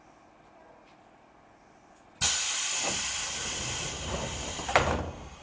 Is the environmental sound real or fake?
real